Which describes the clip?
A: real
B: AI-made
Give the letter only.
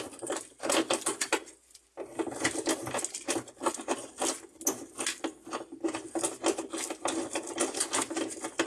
A